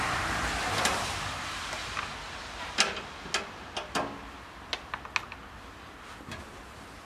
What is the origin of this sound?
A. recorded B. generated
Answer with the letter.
A